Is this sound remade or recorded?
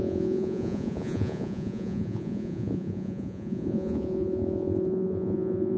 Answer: remade